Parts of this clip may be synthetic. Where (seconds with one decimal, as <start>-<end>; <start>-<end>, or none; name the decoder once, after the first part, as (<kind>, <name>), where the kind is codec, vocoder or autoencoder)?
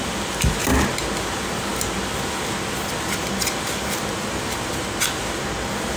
none